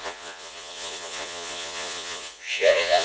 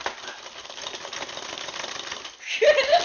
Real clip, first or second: second